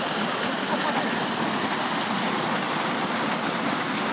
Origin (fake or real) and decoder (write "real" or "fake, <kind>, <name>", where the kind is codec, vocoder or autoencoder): real